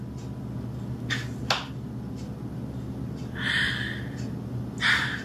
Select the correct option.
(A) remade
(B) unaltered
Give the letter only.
B